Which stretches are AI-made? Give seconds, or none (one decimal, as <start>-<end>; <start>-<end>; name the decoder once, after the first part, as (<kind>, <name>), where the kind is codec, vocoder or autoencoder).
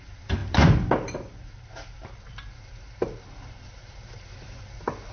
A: none